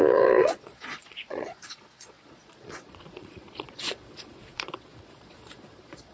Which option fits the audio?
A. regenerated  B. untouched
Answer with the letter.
A